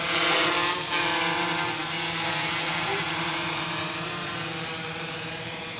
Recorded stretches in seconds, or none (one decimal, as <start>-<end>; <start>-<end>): none